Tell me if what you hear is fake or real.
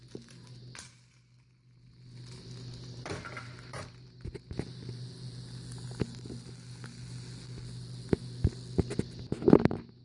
real